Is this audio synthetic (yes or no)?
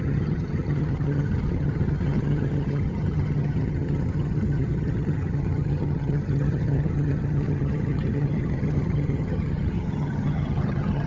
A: yes